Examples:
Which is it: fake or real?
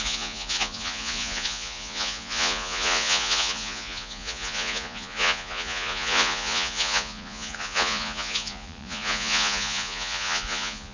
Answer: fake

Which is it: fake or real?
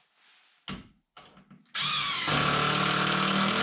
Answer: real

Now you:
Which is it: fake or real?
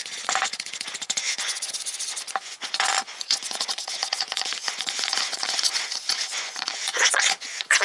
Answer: fake